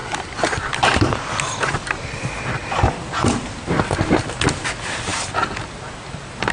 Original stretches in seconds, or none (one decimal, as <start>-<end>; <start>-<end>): 0.0-6.5